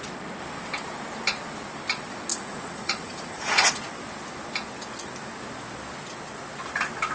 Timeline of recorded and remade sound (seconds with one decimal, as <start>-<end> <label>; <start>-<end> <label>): 0.0-2.3 recorded; 2.3-3.8 remade; 3.8-7.1 recorded